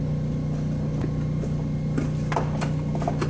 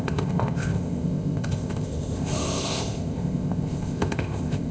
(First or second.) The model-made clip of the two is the second